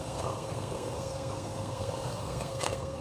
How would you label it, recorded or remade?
remade